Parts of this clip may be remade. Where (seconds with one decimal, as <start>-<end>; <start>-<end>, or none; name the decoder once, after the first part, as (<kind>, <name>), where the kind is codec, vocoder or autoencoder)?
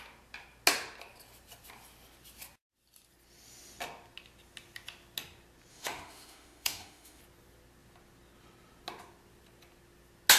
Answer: 5.7-7.2 (autoencoder, DAC-VAE)